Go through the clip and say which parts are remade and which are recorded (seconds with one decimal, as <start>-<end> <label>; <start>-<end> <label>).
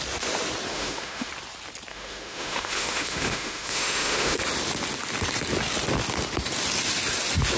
0.0-0.7 recorded; 0.7-1.3 remade; 1.3-1.9 recorded; 1.9-4.4 remade; 4.4-7.6 recorded